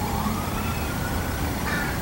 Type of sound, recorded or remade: remade